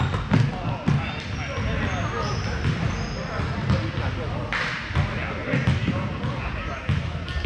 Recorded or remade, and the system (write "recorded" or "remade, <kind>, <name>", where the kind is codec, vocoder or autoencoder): recorded